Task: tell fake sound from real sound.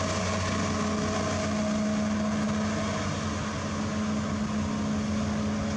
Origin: real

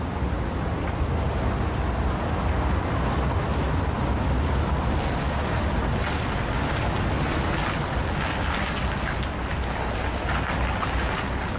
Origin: real